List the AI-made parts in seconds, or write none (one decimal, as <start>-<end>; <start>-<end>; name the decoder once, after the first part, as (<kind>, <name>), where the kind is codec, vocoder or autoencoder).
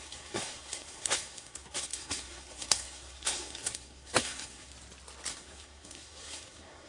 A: 0.0-4.7 (codec, SNAC); 5.3-6.9